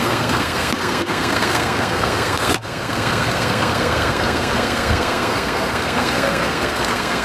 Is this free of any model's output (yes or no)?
no